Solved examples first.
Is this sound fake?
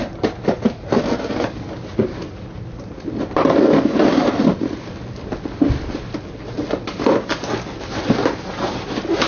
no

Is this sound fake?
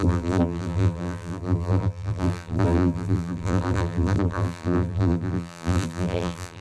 yes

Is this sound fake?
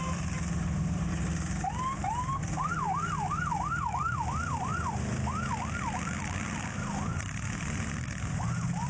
yes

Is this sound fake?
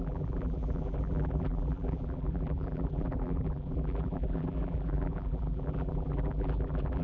yes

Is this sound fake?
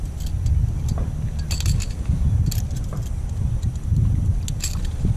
no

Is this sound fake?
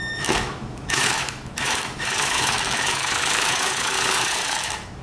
yes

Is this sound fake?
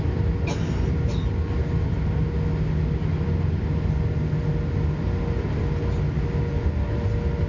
no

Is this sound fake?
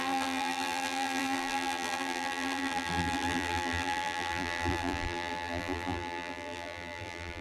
yes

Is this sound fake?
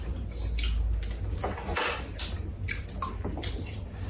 no